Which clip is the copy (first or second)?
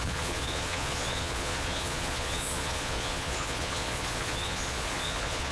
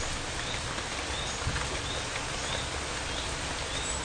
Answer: first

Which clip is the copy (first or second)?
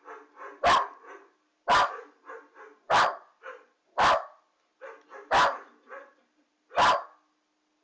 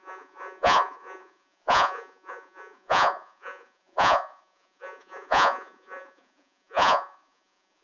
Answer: second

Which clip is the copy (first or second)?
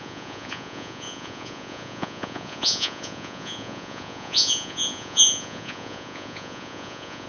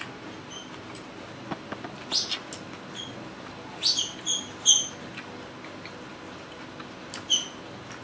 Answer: first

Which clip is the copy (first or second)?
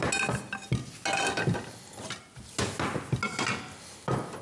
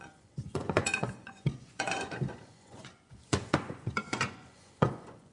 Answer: second